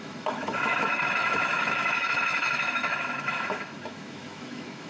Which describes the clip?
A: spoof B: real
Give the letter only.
A